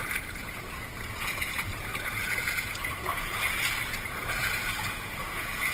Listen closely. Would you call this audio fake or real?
fake